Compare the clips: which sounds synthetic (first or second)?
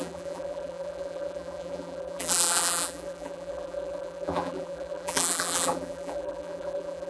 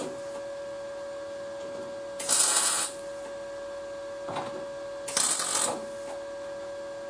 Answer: first